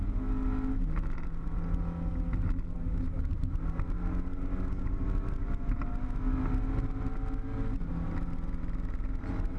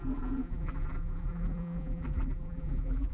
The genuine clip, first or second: first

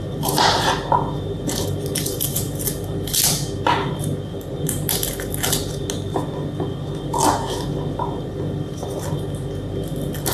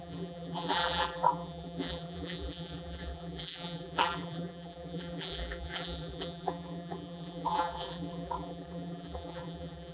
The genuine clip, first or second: first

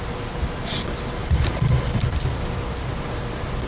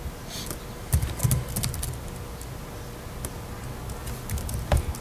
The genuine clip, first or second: second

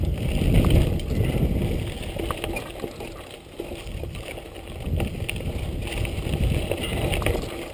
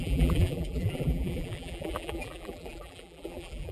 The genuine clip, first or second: first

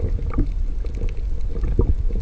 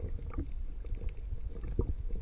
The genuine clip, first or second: first